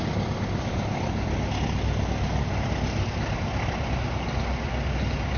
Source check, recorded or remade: recorded